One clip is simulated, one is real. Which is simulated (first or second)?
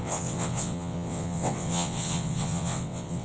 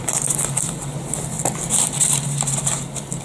first